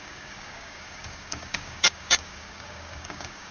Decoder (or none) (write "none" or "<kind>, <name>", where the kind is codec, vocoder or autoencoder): codec, DAC